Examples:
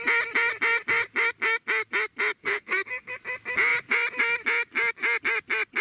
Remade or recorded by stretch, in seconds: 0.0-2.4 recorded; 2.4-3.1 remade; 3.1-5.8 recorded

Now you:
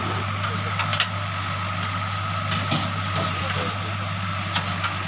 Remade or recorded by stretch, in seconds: 0.0-5.1 recorded

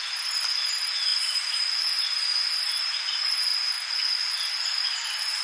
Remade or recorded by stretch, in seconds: 0.0-3.5 remade; 3.5-4.5 recorded; 4.5-5.4 remade

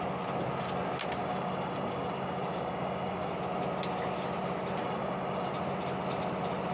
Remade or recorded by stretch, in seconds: 0.0-1.2 recorded; 1.2-3.3 remade; 3.3-4.8 recorded; 4.8-5.5 remade; 5.5-6.7 recorded

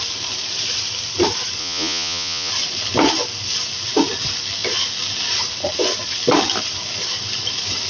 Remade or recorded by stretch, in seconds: 0.0-1.6 recorded; 1.6-2.5 remade; 2.5-7.9 recorded